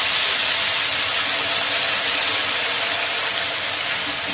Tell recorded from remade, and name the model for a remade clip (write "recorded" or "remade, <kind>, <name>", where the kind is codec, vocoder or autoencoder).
recorded